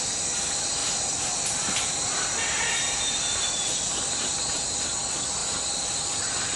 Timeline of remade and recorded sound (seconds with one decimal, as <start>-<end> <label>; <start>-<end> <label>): 0.0-6.6 recorded